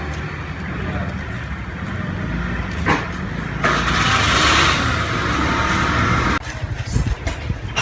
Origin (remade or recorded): recorded